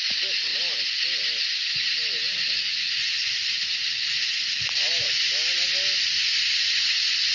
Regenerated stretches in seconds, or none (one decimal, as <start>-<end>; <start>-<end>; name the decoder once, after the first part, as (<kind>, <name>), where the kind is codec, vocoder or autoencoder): none